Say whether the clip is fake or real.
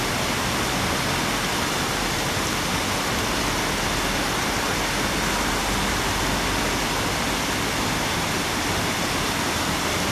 real